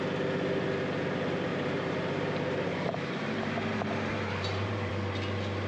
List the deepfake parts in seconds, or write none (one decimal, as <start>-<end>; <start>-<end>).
1.5-4.9